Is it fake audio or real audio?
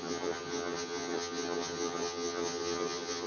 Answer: fake